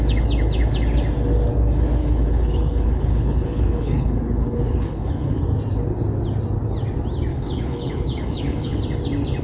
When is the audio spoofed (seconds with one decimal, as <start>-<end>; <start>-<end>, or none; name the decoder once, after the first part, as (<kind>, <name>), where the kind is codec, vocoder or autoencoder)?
2.0-5.4 (codec, HILCodec); 7.3-8.8